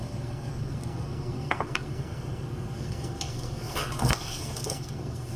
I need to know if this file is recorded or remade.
remade